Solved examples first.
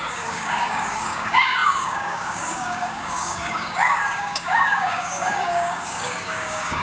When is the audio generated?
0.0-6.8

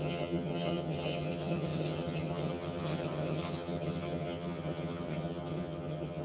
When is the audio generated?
0.0-6.2

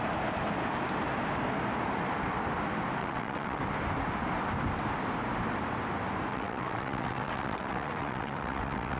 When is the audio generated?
3.0-3.6; 6.3-9.0

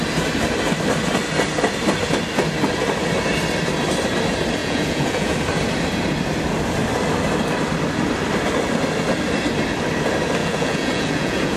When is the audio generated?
4.6-5.3; 10.4-11.6

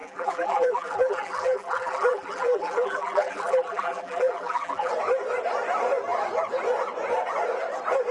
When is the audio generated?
0.0-4.9

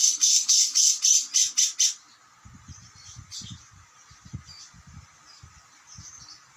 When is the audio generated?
0.0-0.9

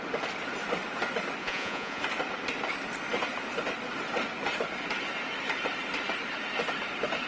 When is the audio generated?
1.4-2.0